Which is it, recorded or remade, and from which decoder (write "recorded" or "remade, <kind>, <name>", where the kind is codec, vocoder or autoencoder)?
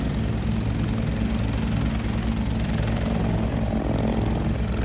recorded